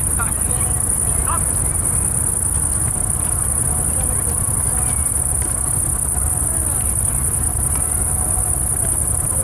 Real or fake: real